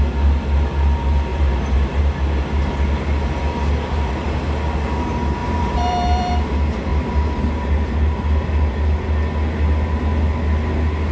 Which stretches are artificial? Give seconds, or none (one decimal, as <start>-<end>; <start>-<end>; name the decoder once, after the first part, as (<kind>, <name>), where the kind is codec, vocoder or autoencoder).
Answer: 1.3-2.0 (vocoder, BigVGAN v2); 5.4-6.3